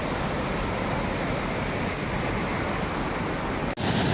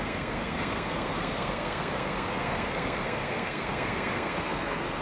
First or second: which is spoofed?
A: second